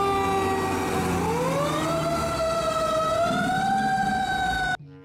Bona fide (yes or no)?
yes